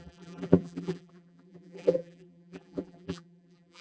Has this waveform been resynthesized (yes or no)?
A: yes